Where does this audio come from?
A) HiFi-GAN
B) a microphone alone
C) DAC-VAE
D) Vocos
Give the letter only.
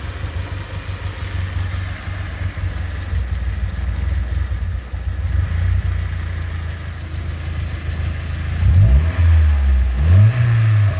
B